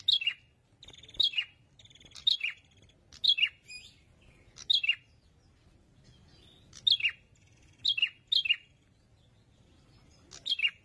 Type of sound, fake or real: real